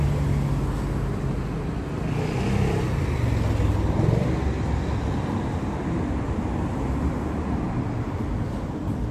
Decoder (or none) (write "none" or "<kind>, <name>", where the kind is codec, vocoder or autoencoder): none